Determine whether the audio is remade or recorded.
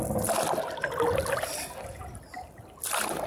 recorded